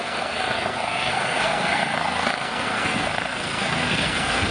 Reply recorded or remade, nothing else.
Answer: remade